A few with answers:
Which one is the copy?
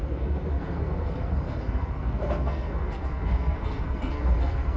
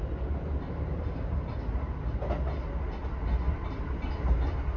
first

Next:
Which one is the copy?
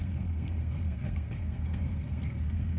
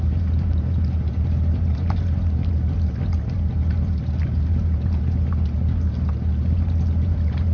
first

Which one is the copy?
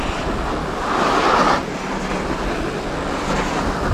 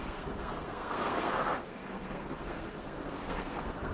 second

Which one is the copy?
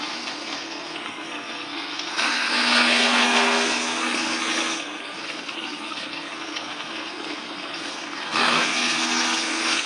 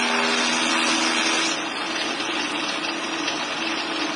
first